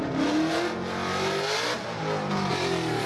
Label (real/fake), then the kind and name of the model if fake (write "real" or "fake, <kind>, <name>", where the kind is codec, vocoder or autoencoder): real